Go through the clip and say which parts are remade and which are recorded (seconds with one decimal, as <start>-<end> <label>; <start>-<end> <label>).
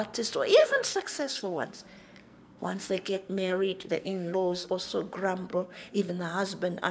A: 0.0-0.6 recorded; 0.6-1.8 remade; 1.8-2.2 recorded; 2.2-4.7 remade; 4.7-5.5 recorded; 5.5-6.1 remade; 6.1-6.9 recorded